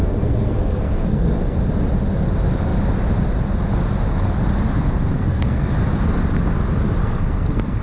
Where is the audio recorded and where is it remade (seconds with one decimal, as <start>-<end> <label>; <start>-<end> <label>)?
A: 0.0-1.6 remade; 1.6-5.1 recorded; 5.1-5.7 remade; 5.7-7.0 recorded; 7.0-7.8 remade